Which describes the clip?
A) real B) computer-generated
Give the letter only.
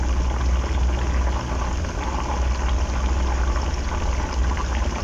A